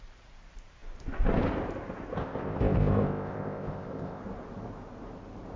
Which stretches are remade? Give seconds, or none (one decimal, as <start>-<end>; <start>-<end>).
2.2-4.2